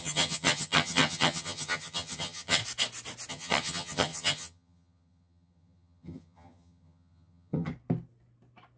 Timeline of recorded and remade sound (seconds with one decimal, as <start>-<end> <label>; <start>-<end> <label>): 0.0-2.6 remade; 2.6-3.3 recorded; 3.3-7.7 remade; 7.7-8.8 recorded